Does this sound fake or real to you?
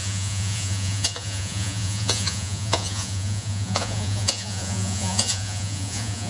fake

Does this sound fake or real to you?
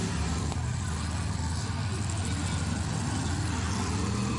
real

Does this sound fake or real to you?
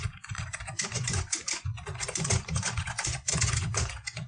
fake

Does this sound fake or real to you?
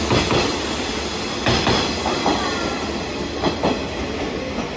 real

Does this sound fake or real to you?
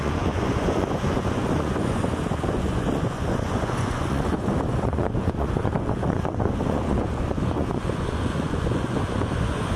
fake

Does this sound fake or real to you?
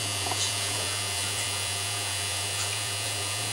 fake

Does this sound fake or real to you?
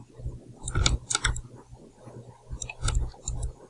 real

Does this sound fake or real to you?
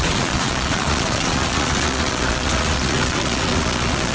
fake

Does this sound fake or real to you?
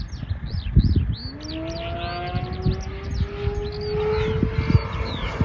real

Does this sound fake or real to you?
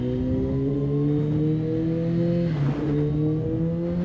real